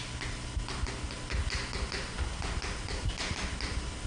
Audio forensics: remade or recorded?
recorded